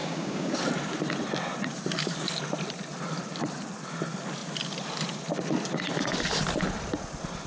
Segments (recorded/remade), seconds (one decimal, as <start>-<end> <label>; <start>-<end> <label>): 0.0-0.6 remade; 0.6-7.5 recorded